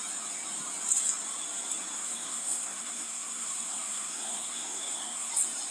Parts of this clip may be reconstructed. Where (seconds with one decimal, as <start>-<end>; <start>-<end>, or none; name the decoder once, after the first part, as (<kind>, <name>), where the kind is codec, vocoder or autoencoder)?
1.9-5.3 (codec, SNAC)